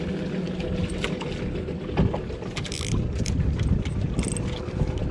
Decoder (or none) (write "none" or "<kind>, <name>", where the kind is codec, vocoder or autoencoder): none